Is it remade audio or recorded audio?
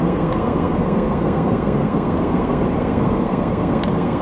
remade